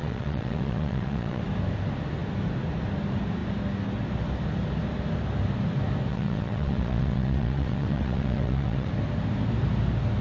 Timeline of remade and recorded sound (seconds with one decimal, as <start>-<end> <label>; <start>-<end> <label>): 0.0-1.4 remade; 1.4-6.1 recorded; 6.1-8.9 remade; 8.9-10.2 recorded